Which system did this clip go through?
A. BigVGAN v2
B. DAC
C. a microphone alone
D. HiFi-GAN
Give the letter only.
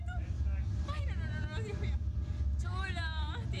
C